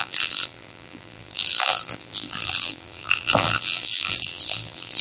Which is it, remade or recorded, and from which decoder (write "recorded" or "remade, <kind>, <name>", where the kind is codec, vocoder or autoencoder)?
remade, vocoder, BigVGAN v2